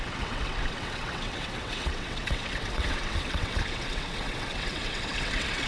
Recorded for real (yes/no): no